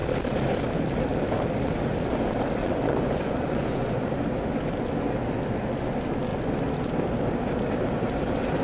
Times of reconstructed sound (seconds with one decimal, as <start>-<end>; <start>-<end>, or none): 2.6-4.1